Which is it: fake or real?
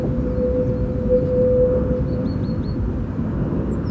real